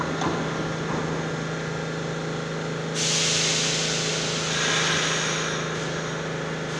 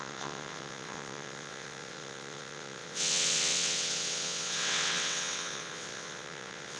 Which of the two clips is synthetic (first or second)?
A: second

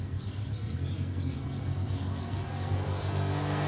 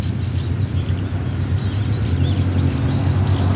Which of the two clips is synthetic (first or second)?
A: first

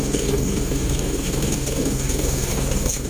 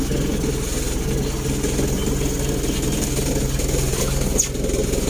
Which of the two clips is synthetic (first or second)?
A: first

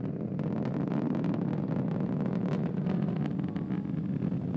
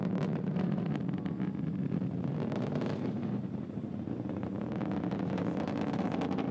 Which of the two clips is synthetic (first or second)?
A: second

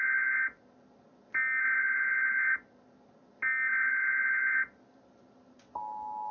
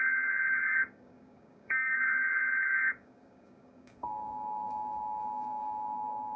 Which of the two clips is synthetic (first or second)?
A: second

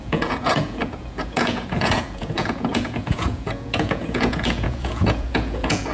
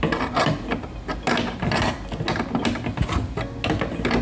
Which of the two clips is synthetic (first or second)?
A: first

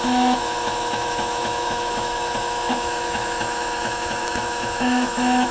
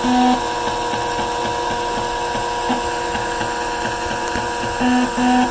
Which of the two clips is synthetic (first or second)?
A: first